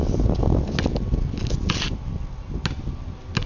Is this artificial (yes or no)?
no